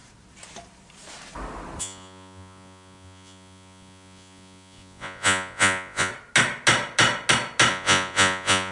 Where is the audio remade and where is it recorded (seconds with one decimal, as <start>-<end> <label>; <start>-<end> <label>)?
0.0-1.8 recorded; 1.8-6.1 remade; 6.1-7.7 recorded; 7.7-8.7 remade